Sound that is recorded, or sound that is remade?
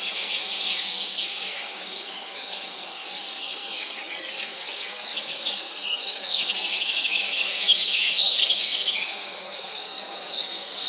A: remade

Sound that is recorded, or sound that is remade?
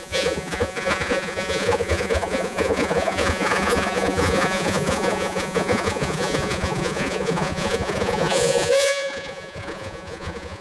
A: remade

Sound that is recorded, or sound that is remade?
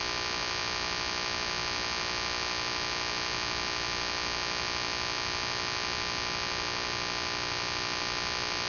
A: recorded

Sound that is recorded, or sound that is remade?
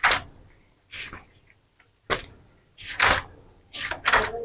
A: recorded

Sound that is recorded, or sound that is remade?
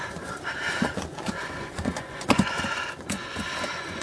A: remade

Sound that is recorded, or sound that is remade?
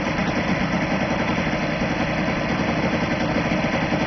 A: recorded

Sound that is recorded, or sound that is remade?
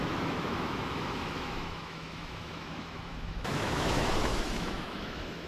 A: remade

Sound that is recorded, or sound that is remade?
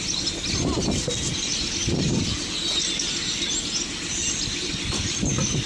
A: recorded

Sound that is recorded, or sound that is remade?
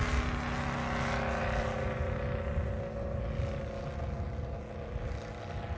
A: recorded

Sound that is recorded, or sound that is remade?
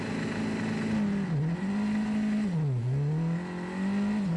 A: recorded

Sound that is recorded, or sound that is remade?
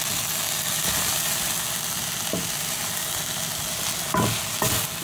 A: recorded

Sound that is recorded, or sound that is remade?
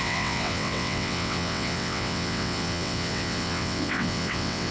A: remade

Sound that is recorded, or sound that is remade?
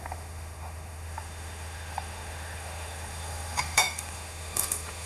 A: remade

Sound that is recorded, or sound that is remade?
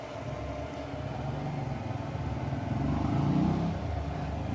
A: recorded